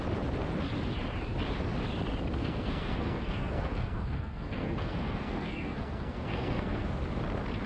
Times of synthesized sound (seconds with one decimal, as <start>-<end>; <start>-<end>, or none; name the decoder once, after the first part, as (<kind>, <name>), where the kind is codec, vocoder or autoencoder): 2.4-6.9 (codec, SNAC)